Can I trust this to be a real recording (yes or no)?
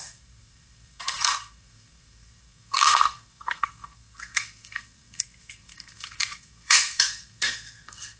no